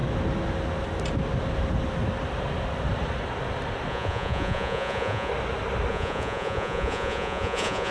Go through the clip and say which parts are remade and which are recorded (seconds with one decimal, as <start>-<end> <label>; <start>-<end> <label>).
0.0-3.9 recorded; 3.9-5.3 remade; 5.3-5.9 recorded; 5.9-7.9 remade